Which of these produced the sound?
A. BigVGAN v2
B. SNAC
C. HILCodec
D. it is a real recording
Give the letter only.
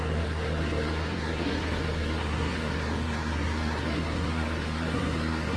B